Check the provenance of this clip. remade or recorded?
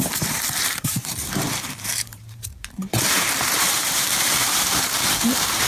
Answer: remade